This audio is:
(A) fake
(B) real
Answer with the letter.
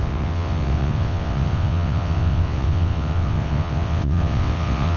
A